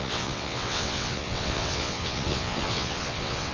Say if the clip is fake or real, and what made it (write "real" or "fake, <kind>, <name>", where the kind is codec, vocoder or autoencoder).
fake, vocoder, WaveNeXt